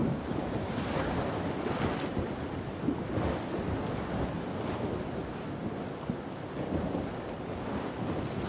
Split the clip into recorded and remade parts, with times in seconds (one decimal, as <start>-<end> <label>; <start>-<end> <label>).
0.0-0.7 remade; 0.7-8.5 recorded